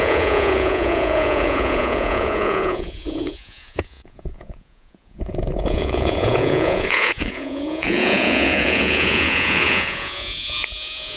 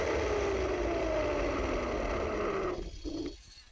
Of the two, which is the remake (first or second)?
first